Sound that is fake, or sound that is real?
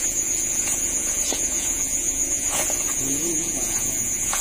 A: fake